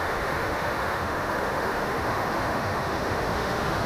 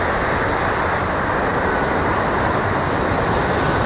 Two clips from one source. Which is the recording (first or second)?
second